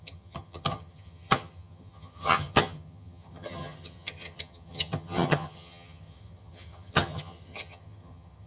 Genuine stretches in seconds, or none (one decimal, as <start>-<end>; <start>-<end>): none